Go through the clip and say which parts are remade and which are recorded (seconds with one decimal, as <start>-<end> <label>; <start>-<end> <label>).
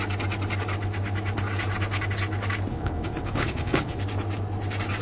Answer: 0.0-2.7 recorded; 2.7-4.0 remade; 4.0-5.0 recorded